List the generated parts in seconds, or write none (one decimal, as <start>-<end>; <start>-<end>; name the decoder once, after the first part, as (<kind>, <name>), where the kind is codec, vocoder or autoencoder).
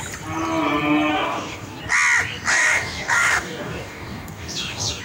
1.1-1.8 (codec, DAC); 2.5-5.0